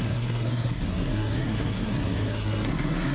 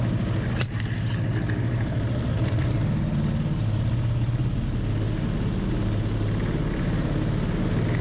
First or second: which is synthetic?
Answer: first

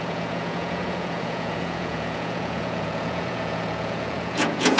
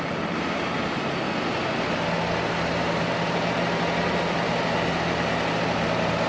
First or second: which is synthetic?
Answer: first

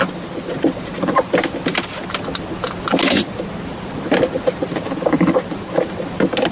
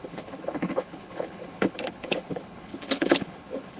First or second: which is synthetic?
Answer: second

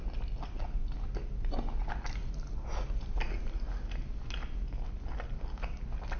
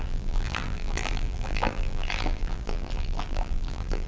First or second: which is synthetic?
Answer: second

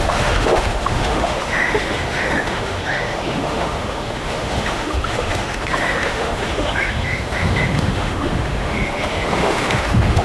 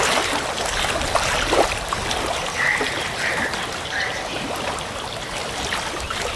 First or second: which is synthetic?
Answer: first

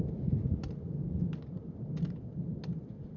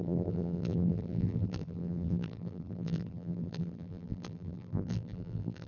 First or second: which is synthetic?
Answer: second